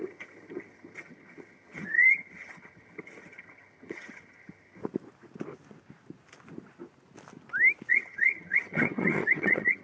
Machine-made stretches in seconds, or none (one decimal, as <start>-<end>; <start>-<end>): 0.0-4.8; 7.9-9.8